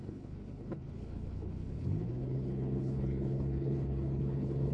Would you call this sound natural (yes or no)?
no